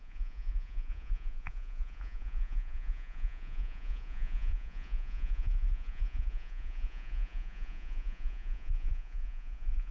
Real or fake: fake